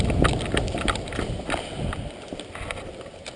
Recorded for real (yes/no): yes